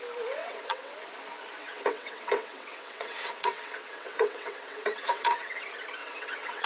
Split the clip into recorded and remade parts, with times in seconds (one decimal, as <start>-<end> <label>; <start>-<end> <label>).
0.0-0.4 recorded; 0.4-0.9 remade; 0.9-1.6 recorded; 1.6-5.6 remade; 5.6-6.0 recorded; 6.0-6.7 remade